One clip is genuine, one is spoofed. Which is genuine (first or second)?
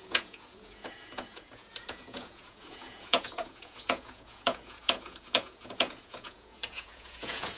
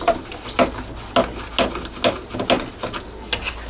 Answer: second